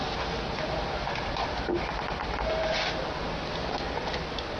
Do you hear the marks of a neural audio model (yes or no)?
no